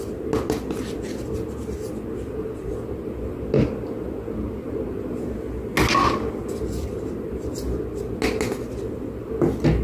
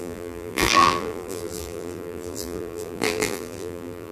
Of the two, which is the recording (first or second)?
first